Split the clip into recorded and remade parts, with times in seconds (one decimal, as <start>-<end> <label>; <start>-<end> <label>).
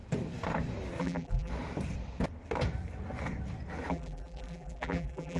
0.0-1.0 recorded; 1.0-1.5 remade; 1.5-3.9 recorded; 3.9-5.4 remade